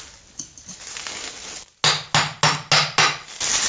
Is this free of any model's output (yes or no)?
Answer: yes